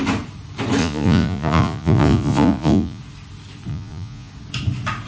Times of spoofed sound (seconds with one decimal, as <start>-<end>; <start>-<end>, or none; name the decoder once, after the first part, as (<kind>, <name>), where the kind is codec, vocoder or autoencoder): 0.8-3.0 (vocoder, Vocos); 3.7-4.3